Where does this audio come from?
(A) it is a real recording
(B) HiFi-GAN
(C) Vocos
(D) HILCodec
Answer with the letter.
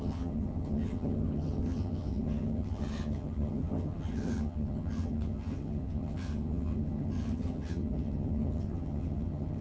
B